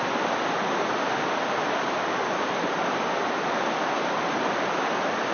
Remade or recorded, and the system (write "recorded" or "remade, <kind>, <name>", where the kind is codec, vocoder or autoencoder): recorded